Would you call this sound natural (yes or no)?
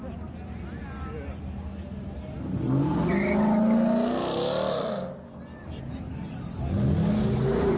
yes